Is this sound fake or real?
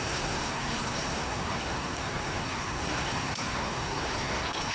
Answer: fake